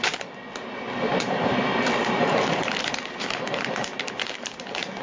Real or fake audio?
real